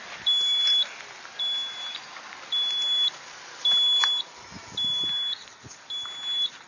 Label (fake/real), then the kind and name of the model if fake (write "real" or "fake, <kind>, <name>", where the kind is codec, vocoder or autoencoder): real